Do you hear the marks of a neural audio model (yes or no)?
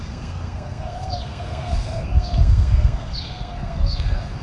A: yes